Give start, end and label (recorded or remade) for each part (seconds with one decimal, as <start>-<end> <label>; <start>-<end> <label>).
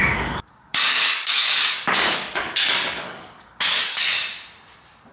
0.0-4.2 remade; 4.2-5.1 recorded